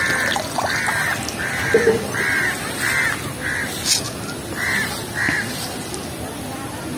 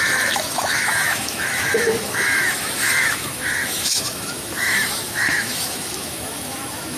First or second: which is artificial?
second